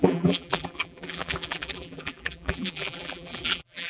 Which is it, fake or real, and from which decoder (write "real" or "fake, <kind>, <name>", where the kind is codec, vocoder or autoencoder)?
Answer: fake, vocoder, BigVGAN v2